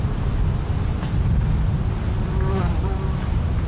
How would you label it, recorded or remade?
recorded